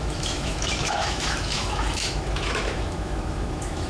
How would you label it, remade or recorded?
remade